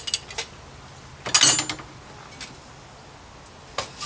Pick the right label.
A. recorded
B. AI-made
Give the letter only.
A